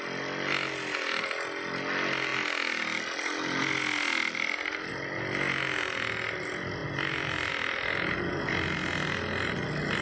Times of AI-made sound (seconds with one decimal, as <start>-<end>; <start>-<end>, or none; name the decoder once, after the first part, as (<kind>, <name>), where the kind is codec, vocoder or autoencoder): none